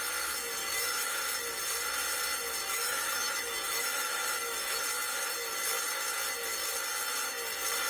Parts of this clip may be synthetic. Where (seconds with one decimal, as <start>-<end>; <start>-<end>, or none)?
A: 0.6-1.2; 2.6-4.8